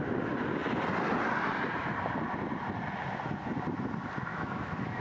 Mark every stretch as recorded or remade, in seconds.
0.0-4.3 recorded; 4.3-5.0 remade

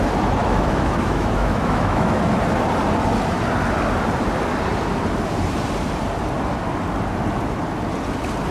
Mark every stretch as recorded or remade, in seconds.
0.0-0.4 recorded; 0.4-2.4 remade; 2.4-8.5 recorded

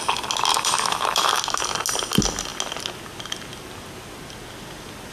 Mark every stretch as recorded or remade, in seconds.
0.0-0.5 recorded; 0.5-1.4 remade; 1.4-5.1 recorded

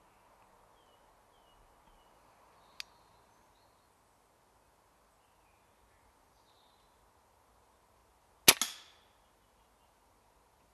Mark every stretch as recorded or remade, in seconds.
0.0-10.7 recorded

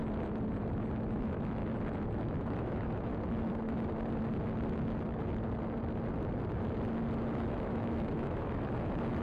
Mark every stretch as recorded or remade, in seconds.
0.0-1.2 recorded; 1.2-1.6 remade; 1.6-2.2 recorded; 2.2-3.1 remade; 3.1-7.5 recorded; 7.5-9.2 remade

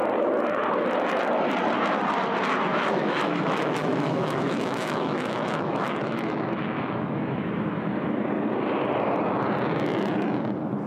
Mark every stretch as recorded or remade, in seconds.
0.0-2.7 recorded; 2.7-7.5 remade; 7.5-10.9 recorded

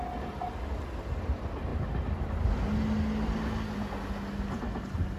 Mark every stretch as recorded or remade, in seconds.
0.0-5.2 recorded